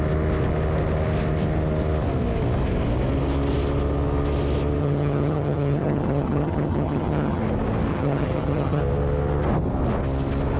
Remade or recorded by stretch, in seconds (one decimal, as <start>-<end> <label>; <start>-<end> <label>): 0.0-4.8 recorded; 4.8-7.4 remade; 7.4-7.9 recorded; 7.9-8.8 remade; 8.8-10.6 recorded